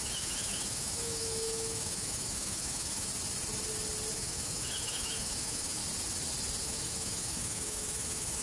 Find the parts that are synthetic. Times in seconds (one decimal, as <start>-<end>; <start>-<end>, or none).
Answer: 0.0-3.1; 4.1-5.8; 6.6-8.4